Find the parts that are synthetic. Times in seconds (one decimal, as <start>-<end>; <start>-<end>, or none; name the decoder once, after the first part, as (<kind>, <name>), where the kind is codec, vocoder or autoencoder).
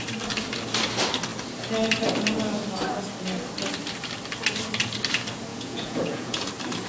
5.5-6.5 (vocoder, Vocos)